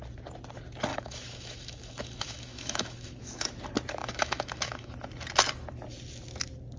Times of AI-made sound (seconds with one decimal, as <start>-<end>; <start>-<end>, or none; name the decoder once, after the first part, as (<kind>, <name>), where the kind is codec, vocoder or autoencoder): 0.9-3.6 (autoencoder, DAC-VAE); 4.0-4.9